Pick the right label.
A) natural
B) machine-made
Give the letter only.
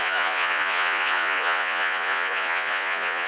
B